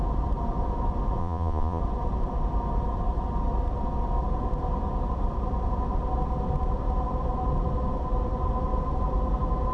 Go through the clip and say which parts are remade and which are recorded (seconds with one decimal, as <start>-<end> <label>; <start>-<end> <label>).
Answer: 0.0-1.2 recorded; 1.2-1.8 remade; 1.8-9.7 recorded